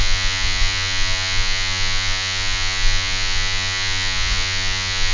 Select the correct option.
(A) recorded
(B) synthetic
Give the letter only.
B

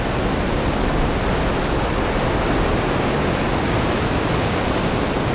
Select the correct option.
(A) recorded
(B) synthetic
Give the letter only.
A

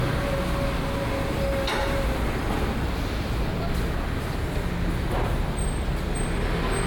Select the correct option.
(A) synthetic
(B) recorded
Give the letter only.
B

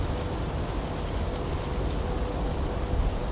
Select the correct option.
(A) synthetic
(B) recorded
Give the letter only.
B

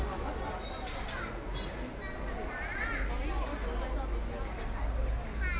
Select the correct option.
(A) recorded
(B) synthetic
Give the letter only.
A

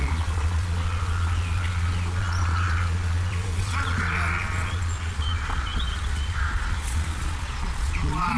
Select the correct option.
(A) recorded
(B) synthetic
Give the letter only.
B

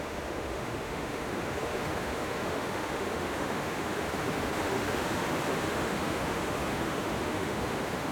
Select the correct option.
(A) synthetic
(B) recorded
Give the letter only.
A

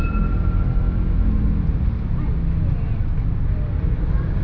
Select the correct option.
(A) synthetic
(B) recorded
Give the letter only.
B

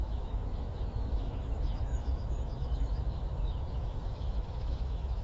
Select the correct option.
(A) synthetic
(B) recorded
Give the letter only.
A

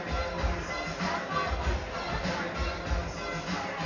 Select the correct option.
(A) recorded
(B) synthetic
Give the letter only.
A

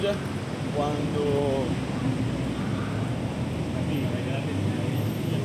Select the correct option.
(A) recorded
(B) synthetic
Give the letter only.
A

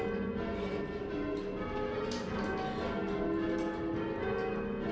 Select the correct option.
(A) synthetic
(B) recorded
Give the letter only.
B